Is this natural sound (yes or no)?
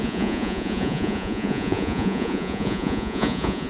no